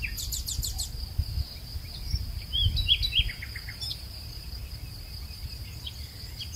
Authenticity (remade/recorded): recorded